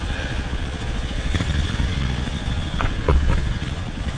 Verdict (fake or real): fake